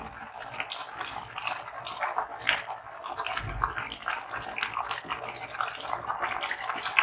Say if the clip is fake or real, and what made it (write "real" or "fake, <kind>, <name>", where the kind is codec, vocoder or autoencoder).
real